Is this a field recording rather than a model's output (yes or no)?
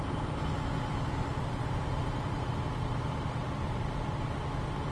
yes